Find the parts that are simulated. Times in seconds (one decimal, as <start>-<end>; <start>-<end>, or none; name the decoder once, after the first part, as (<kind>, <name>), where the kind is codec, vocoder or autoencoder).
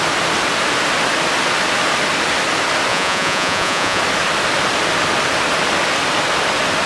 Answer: 2.9-4.0 (vocoder, Vocos)